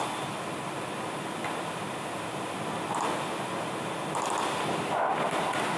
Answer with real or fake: real